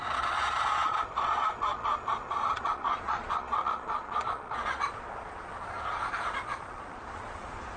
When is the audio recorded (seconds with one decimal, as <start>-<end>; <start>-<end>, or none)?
none